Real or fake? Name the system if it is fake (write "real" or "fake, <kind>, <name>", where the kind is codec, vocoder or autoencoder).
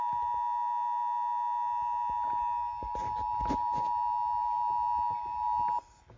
real